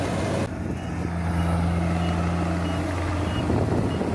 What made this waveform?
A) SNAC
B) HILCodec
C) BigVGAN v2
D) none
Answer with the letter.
D